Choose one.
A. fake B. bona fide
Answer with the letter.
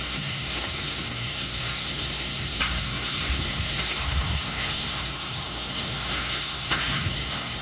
A